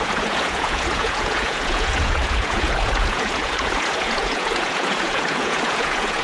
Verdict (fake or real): fake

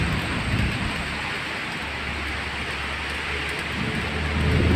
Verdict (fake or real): real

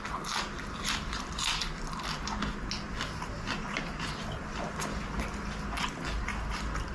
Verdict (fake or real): real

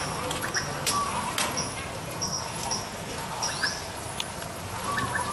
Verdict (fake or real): real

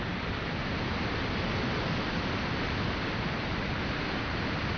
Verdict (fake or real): fake